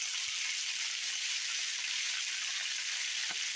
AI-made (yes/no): no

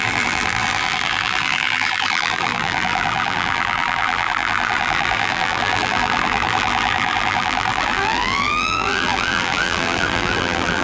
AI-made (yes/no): yes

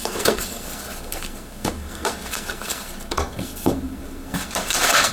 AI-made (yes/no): yes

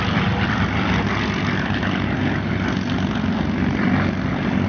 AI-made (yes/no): no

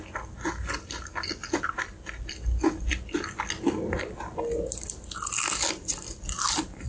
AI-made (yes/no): no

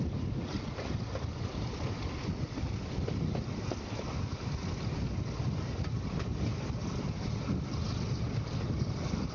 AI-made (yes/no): no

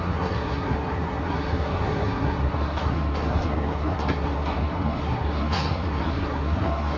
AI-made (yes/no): yes